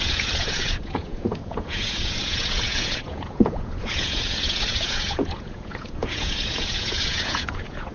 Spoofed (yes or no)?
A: yes